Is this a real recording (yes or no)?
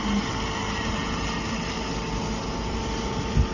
yes